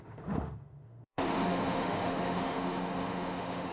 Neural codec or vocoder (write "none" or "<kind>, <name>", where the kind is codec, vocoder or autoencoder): autoencoder, DAC-VAE